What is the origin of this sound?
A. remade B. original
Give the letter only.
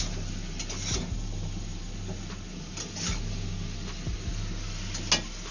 B